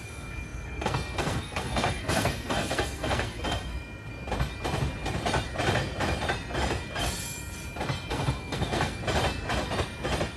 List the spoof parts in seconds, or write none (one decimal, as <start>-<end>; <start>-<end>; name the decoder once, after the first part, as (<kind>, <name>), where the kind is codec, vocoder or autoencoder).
0.0-3.7 (codec, SNAC); 8.1-9.0